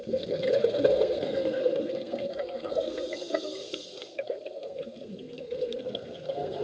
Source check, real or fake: fake